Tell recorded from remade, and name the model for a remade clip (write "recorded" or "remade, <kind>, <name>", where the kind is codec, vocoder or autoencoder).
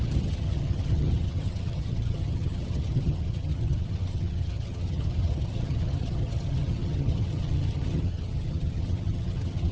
remade, vocoder, HiFi-GAN